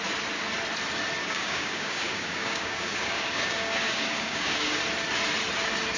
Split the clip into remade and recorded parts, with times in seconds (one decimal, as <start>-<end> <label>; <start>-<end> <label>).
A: 0.0-1.2 recorded; 1.2-4.8 remade; 4.8-6.0 recorded